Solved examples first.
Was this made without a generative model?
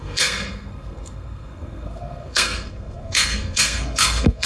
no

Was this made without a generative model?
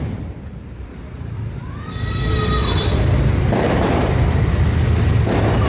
no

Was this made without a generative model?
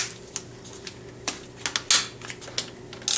yes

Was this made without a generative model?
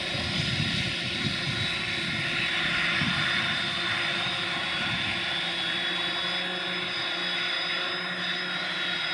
yes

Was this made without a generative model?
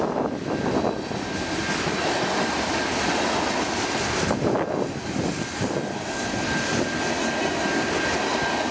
yes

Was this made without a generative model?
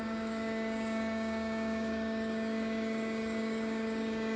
no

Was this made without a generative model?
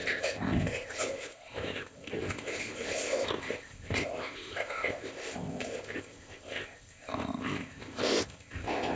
no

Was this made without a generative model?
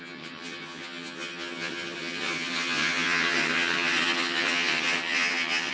no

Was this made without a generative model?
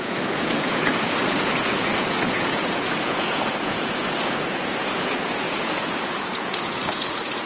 no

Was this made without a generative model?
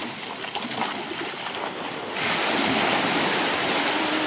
yes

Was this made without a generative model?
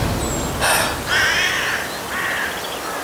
yes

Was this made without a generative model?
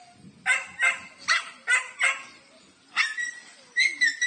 yes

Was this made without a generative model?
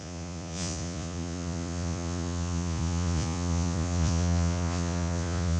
no